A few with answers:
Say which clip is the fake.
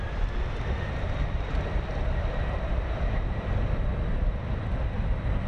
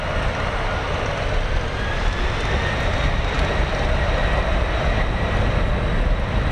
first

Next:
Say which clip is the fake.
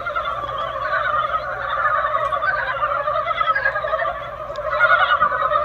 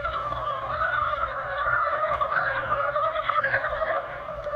second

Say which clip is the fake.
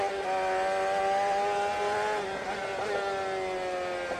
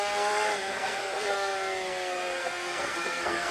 second